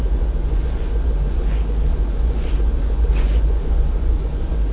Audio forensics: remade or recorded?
remade